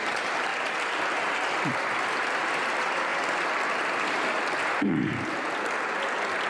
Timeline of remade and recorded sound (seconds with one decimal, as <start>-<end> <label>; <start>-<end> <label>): 0.0-0.5 remade; 0.5-1.1 recorded; 1.1-3.1 remade; 3.1-6.5 recorded